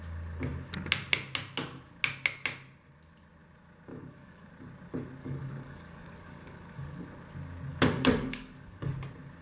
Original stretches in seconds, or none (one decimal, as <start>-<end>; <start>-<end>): 0.0-3.9; 4.5-5.2; 7.0-7.7; 8.9-9.4